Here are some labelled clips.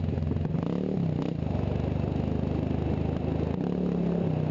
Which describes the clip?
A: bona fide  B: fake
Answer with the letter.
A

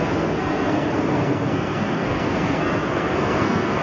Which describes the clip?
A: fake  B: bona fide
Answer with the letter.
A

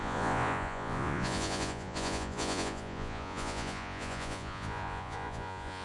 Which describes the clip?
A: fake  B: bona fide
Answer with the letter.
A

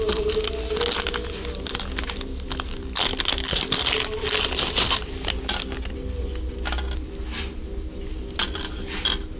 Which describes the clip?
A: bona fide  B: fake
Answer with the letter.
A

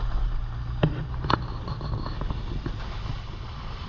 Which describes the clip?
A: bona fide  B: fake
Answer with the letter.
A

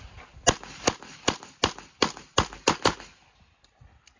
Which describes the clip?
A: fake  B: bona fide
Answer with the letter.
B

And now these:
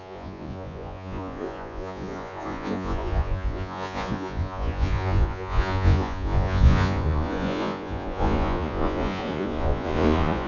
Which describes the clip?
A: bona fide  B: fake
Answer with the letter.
B